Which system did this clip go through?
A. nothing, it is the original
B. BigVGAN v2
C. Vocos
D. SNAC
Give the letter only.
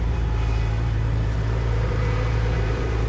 B